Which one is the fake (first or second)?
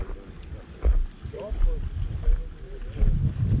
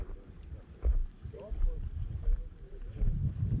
second